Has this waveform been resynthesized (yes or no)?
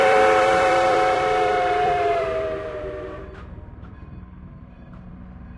yes